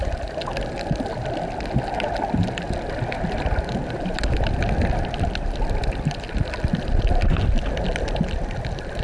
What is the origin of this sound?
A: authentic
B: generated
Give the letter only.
A